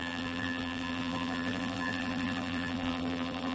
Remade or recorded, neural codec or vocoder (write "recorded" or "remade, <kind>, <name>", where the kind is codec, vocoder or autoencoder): remade, vocoder, BigVGAN v2